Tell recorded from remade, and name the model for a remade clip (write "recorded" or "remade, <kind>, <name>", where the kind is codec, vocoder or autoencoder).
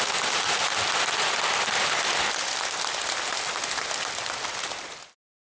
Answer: recorded